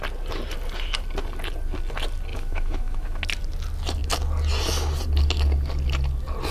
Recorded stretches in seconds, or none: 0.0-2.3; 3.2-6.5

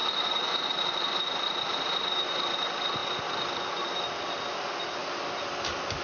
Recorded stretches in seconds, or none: 2.2-6.0

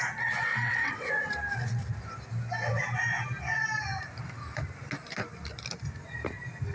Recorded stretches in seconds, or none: 0.0-0.5; 1.3-6.7